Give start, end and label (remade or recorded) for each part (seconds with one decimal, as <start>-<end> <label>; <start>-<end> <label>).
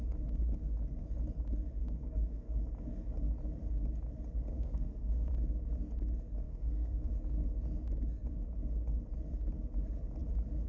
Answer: 0.0-1.8 recorded; 1.8-2.6 remade; 2.6-4.5 recorded; 4.5-5.3 remade; 5.3-6.4 recorded; 6.4-7.1 remade; 7.1-10.7 recorded